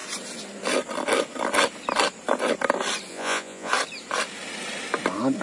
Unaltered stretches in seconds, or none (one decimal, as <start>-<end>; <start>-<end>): 0.0-3.1; 3.7-5.4